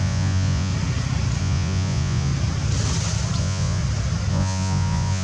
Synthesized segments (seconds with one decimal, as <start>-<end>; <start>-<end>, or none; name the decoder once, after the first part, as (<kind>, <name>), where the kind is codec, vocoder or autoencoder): 0.0-0.7 (vocoder, Vocos); 1.4-2.3; 3.4-3.8; 4.3-5.2